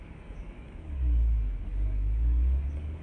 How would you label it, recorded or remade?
remade